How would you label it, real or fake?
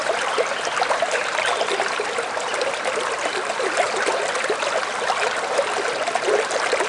real